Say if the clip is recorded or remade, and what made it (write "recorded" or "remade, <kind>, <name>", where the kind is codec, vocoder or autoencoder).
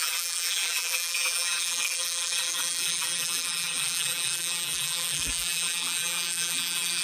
remade, vocoder, BigVGAN v2